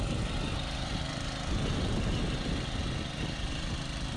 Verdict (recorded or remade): recorded